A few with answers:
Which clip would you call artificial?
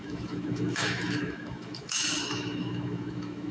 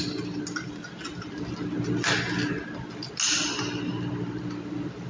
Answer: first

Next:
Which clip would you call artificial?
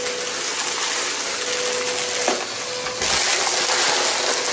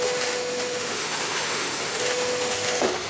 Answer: second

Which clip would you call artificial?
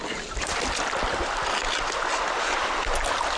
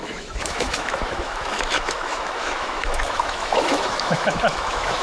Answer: second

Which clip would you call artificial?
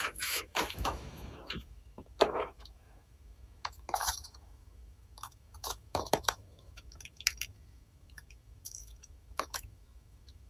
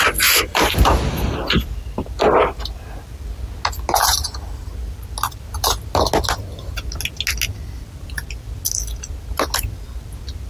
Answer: first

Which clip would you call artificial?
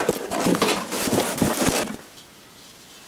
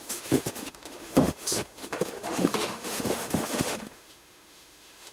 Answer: second